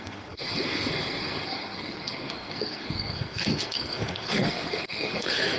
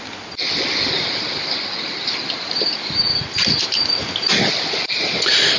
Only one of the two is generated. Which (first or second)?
first